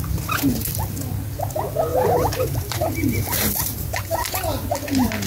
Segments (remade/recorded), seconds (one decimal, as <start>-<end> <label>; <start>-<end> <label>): 0.0-1.9 recorded; 1.9-4.7 remade; 4.7-5.3 recorded